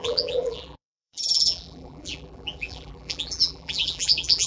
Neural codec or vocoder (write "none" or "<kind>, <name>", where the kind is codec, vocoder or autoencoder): vocoder, BigVGAN v2